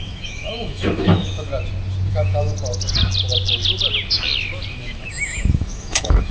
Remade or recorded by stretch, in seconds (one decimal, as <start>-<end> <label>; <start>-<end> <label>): 0.0-1.5 remade; 1.5-2.1 recorded; 2.1-2.5 remade; 2.5-4.7 recorded; 4.7-6.3 remade